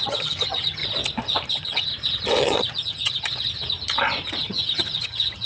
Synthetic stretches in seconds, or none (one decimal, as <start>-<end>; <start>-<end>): 0.0-0.8; 1.5-1.9; 2.4-3.3; 4.4-5.5